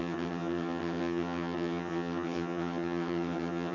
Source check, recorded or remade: remade